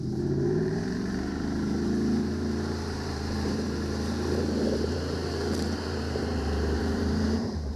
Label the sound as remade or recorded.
remade